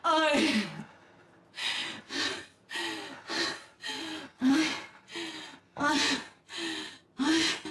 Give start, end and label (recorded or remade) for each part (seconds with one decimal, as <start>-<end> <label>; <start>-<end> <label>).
0.0-7.7 recorded

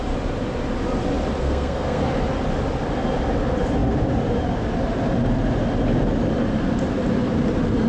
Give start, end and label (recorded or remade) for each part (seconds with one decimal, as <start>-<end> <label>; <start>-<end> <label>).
0.0-1.4 recorded; 1.4-2.0 remade; 2.0-7.9 recorded

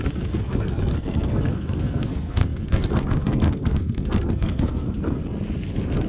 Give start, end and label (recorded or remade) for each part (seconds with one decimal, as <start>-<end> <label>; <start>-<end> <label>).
0.0-5.2 remade; 5.2-6.1 recorded